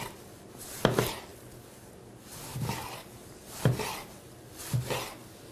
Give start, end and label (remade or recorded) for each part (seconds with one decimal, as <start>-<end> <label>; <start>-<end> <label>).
0.0-1.3 recorded; 1.3-2.0 remade; 2.0-2.5 recorded; 2.5-3.4 remade; 3.4-5.5 recorded